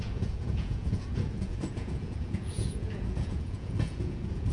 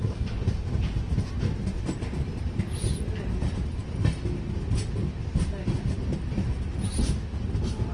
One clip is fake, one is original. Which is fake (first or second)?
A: first